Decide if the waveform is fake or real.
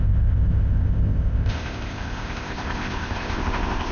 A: fake